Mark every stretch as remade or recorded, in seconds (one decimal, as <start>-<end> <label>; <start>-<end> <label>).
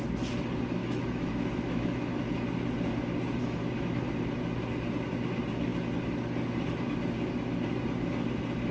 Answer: 0.0-0.8 recorded; 0.8-2.2 remade; 2.2-3.4 recorded; 3.4-4.0 remade; 4.0-8.7 recorded